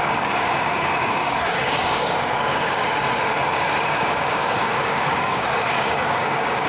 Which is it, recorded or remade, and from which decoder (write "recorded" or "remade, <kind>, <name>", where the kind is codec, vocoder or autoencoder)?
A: remade, codec, DAC